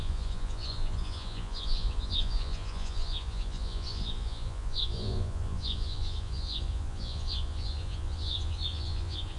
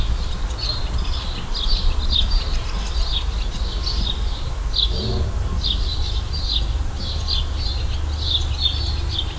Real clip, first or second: second